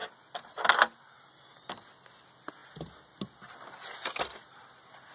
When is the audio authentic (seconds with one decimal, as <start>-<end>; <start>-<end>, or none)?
0.0-5.1